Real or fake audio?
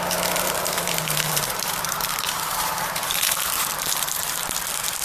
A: fake